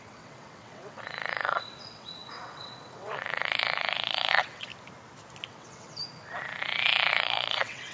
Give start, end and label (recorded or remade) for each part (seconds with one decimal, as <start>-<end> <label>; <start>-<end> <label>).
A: 0.0-4.7 remade; 4.7-5.5 recorded; 5.5-6.0 remade; 6.0-7.1 recorded; 7.1-7.9 remade